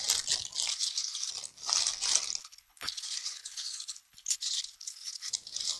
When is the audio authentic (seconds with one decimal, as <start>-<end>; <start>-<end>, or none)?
0.0-0.7; 1.3-2.4; 5.3-5.8